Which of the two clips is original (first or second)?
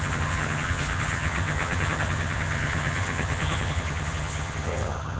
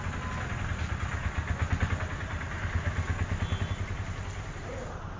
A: second